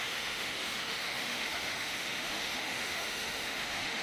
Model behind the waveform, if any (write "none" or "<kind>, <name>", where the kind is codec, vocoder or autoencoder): autoencoder, DAC-VAE